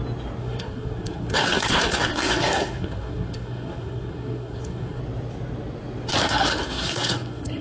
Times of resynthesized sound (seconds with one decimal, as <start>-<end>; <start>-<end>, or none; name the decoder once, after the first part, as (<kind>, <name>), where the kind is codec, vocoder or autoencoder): 0.4-5.0 (codec, SNAC); 6.2-7.6